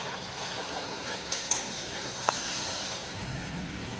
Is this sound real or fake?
fake